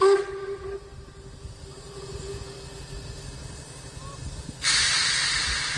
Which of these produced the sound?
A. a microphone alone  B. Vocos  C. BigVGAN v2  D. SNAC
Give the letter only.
A